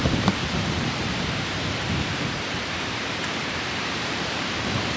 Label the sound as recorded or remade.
remade